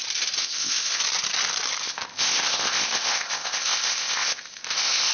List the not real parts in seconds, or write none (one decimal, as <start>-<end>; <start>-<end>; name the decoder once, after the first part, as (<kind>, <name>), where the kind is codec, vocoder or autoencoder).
0.4-1.0 (codec, ZipCodec); 1.8-5.1